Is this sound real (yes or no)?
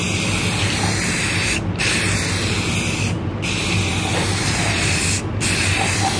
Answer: yes